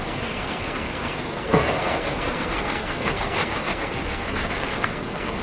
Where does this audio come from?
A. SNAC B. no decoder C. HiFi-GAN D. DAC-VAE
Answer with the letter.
A